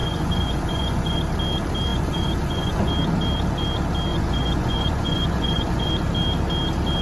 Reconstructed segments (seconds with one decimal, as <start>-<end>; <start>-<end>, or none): 0.0-1.2; 1.9-2.9; 4.1-5.9